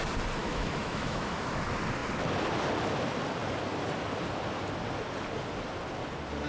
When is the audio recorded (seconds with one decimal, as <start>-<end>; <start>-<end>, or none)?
0.0-0.4; 1.6-6.5

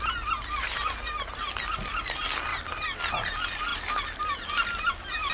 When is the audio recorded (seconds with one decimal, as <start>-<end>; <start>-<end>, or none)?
0.0-5.3